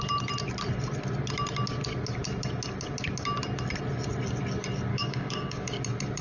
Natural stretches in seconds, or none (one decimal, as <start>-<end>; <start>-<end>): 0.0-4.9; 5.8-6.2